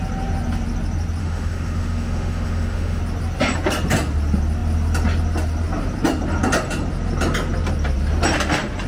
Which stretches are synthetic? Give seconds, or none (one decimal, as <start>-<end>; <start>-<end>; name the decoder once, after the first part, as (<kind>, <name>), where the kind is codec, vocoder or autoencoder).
1.2-3.0 (autoencoder, DAC-VAE)